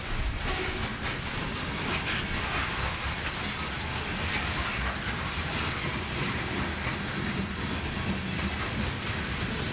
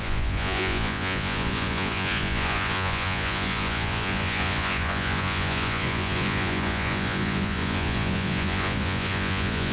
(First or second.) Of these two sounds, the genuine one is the first